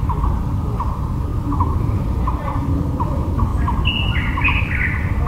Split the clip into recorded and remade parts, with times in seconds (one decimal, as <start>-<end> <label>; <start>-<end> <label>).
0.0-1.3 recorded; 1.3-2.0 remade; 2.0-3.5 recorded; 3.5-4.6 remade; 4.6-5.3 recorded